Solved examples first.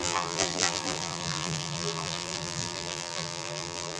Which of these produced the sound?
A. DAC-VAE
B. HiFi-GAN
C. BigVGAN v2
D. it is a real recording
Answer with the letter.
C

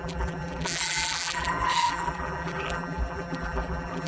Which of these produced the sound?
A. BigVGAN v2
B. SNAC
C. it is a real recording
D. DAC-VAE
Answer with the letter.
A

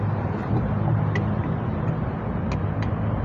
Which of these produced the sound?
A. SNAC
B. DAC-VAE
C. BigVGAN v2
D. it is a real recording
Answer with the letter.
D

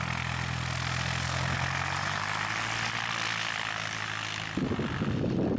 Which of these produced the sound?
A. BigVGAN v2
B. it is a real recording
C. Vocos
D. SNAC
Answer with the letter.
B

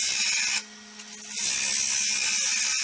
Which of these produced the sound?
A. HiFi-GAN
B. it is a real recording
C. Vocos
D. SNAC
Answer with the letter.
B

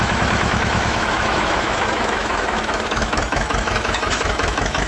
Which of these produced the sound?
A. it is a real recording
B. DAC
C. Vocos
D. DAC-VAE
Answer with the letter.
D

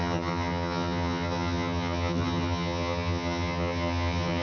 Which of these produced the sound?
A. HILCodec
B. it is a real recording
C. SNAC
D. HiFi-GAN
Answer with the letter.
D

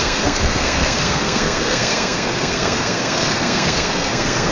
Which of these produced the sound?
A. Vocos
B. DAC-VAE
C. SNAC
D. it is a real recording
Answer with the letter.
C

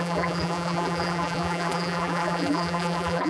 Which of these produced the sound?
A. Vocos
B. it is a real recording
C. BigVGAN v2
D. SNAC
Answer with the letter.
C